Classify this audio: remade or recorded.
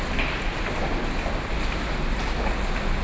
recorded